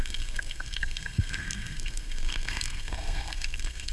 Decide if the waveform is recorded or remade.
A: remade